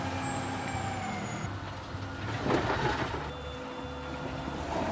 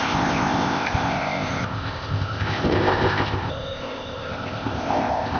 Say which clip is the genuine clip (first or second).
first